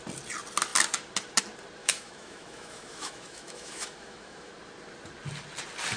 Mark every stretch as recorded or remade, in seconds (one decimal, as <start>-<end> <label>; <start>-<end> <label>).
0.0-1.8 recorded; 1.8-4.5 remade; 4.5-6.0 recorded

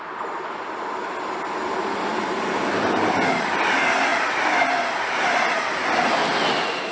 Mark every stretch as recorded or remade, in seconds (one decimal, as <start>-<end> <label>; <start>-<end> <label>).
0.0-6.9 recorded

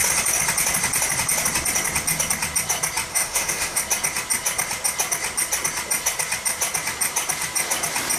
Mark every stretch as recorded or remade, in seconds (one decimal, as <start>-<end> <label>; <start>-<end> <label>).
0.0-3.1 recorded; 3.1-3.8 remade; 3.8-8.2 recorded

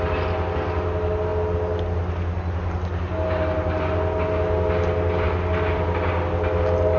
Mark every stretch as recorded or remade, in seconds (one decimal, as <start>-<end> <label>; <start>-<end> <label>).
0.0-7.0 recorded

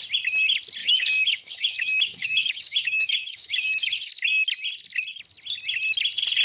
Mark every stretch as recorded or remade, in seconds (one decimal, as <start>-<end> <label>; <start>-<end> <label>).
0.0-0.8 recorded; 0.8-4.1 remade; 4.1-6.4 recorded

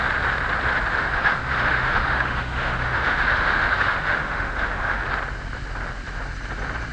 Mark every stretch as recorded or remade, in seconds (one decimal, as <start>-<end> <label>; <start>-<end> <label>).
0.0-0.9 recorded; 0.9-5.0 remade; 5.0-6.9 recorded

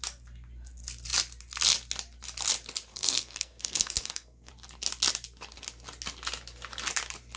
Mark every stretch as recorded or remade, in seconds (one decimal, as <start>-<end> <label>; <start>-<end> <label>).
0.0-2.9 recorded; 2.9-4.5 remade; 4.5-7.4 recorded